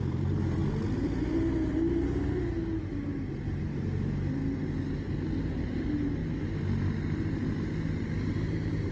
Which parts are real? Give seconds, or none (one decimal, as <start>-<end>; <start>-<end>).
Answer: 0.6-3.6; 4.4-5.4; 6.2-8.3